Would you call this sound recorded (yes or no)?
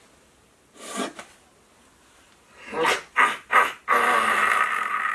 yes